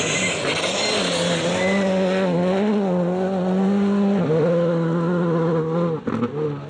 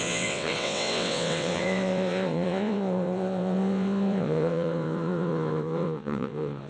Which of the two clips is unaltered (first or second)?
first